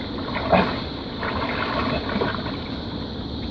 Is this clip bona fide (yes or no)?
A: yes